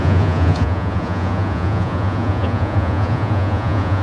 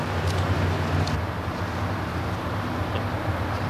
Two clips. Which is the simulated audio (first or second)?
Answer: first